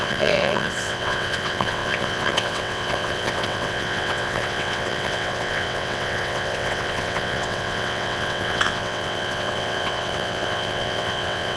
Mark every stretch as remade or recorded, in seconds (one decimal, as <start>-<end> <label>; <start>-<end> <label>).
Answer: 0.0-11.6 remade